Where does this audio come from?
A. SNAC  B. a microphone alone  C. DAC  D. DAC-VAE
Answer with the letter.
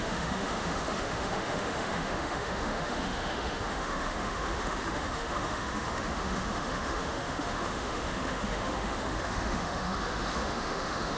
D